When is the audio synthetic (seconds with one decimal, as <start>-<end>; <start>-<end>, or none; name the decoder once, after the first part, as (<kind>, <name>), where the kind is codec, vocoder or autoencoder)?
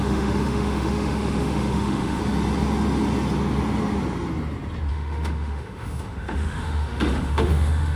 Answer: 0.0-2.2 (autoencoder, DAC-VAE); 4.9-8.0